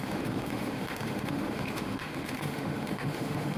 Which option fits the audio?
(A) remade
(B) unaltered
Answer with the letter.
A